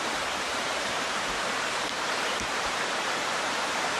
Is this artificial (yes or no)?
yes